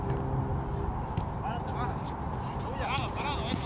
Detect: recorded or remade recorded